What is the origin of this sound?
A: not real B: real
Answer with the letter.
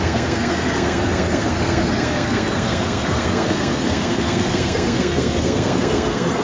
A